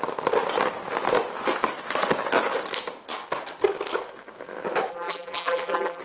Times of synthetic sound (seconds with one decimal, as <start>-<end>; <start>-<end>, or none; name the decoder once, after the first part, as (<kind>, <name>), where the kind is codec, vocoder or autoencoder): 4.9-6.0 (vocoder, BigVGAN v2)